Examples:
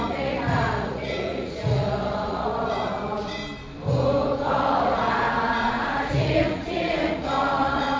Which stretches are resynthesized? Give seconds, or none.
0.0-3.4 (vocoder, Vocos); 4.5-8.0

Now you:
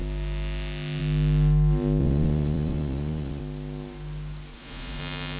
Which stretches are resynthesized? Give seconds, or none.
2.0-3.4 (vocoder, Vocos); 4.5-5.0

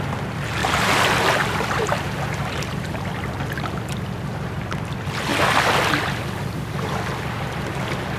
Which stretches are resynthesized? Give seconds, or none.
none

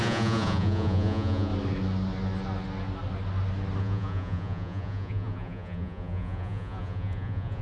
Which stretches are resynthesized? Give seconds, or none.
0.0-1.5 (vocoder, Vocos); 3.8-7.6